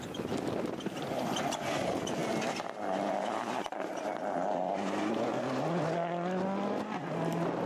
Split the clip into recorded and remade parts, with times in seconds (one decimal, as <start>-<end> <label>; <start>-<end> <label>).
0.0-7.7 recorded